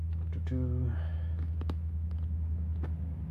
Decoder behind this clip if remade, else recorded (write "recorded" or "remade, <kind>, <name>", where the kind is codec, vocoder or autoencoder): remade, autoencoder, DAC-VAE